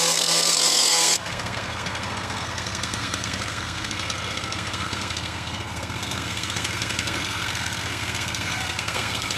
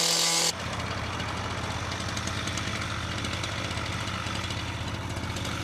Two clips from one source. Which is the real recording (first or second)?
second